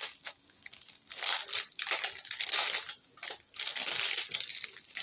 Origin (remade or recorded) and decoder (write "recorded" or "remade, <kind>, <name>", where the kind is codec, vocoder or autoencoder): recorded